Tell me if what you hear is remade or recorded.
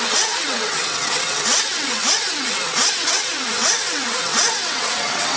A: remade